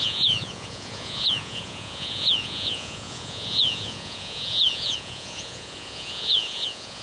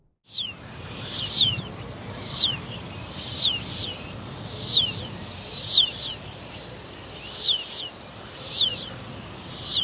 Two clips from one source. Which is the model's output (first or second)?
first